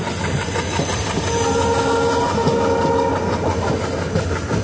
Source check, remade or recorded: recorded